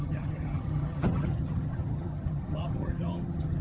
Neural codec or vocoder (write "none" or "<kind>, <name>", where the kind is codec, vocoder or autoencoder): vocoder, HiFi-GAN